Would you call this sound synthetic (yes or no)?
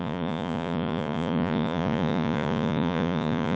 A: yes